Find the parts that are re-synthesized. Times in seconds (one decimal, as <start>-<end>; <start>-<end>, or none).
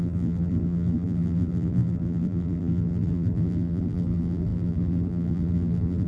0.0-6.1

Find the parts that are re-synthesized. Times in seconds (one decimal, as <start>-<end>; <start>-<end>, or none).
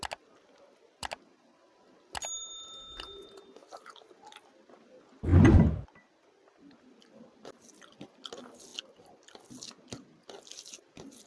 none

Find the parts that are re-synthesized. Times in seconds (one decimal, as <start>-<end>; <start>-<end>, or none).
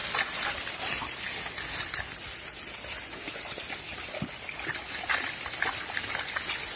none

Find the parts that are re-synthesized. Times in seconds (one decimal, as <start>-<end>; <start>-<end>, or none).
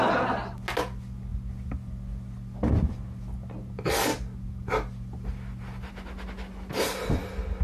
none